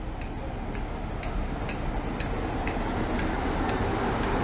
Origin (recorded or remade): recorded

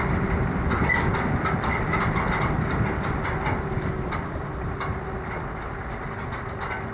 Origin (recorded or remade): recorded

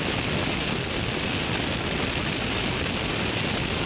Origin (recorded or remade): recorded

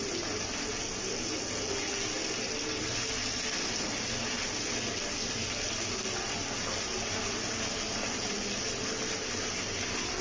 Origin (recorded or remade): recorded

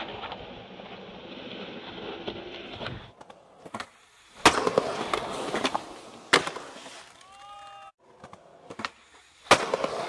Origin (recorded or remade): recorded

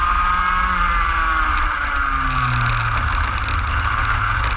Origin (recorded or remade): recorded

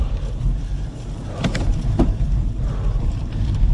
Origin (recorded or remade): remade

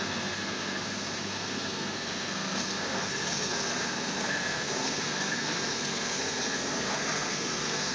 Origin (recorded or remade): remade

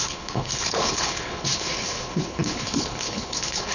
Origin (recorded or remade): remade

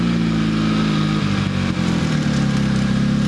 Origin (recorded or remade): recorded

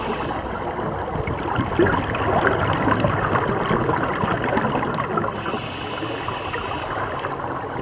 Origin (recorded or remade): recorded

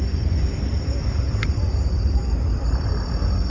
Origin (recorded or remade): recorded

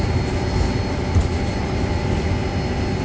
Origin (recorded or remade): recorded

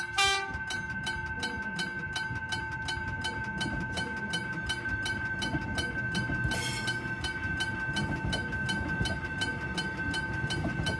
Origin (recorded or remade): recorded